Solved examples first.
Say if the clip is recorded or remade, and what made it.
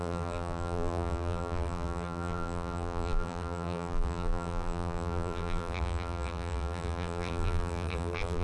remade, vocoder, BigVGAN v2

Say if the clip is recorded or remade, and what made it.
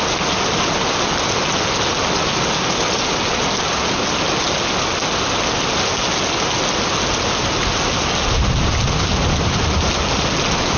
recorded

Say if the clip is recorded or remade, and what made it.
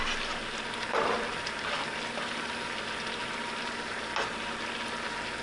recorded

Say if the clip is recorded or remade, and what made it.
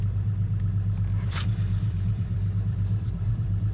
remade, vocoder, BigVGAN v2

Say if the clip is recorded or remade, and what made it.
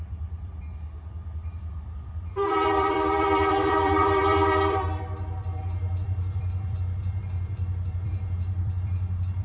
remade, vocoder, BigVGAN v2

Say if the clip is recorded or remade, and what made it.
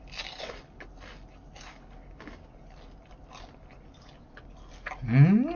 recorded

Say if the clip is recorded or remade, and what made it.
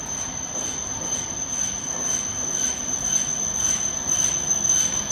recorded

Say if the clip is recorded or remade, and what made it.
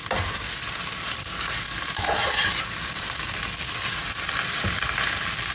recorded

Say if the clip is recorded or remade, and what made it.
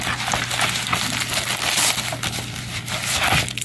recorded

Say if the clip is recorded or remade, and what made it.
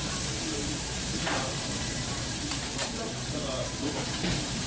remade, vocoder, BigVGAN v2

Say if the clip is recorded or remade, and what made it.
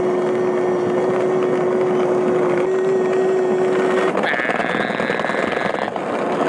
recorded